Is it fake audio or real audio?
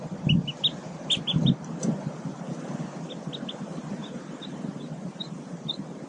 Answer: real